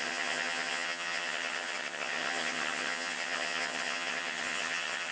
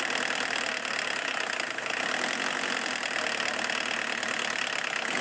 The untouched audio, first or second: second